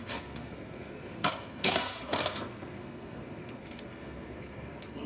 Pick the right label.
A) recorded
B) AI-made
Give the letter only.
B